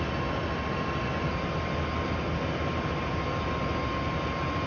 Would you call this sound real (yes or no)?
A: yes